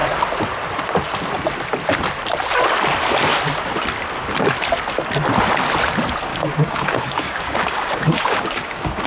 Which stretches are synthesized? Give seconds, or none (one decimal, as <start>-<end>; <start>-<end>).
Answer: 6.3-9.1